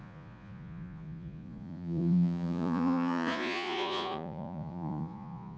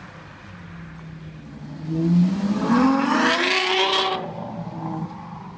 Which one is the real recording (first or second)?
second